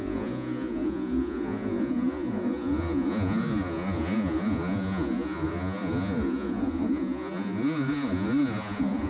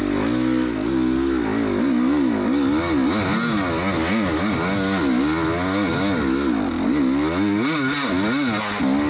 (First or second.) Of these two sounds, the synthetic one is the first